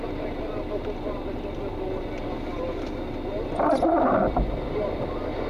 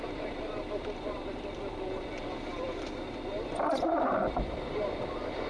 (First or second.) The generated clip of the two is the second